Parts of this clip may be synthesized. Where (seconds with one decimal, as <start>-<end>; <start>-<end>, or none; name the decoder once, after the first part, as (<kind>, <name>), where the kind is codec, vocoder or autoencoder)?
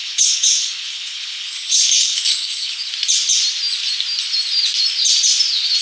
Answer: 0.0-2.9 (codec, HILCodec)